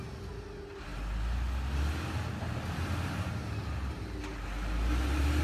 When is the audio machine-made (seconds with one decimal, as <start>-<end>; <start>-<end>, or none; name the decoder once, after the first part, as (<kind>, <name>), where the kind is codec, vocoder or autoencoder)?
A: none